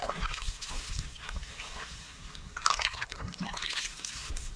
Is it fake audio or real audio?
fake